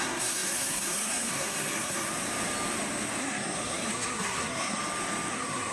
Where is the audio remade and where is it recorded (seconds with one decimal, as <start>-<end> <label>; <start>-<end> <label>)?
0.0-2.1 remade; 2.1-3.2 recorded; 3.2-4.8 remade; 4.8-5.3 recorded; 5.3-5.7 remade